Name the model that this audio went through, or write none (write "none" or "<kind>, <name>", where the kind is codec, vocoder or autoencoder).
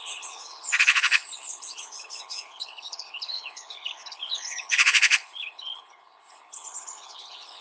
codec, HILCodec